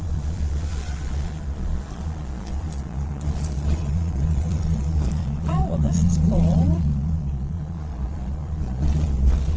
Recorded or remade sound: remade